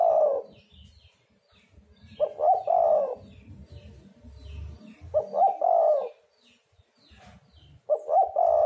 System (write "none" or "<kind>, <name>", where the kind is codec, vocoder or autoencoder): none